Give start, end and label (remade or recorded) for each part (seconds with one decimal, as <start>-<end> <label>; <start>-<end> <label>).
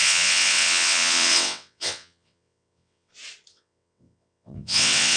0.0-3.1 remade; 3.1-3.5 recorded; 3.5-5.2 remade